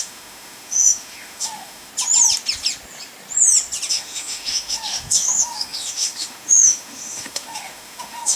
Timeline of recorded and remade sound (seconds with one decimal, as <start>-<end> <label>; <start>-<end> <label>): 0.0-1.9 remade; 1.9-3.9 recorded; 3.9-8.4 remade